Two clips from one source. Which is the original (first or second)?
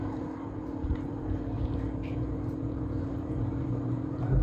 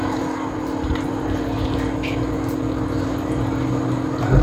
second